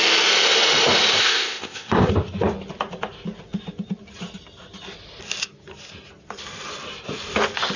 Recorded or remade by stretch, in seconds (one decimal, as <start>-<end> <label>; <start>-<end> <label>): 0.0-1.2 recorded; 1.2-2.1 remade; 2.1-7.8 recorded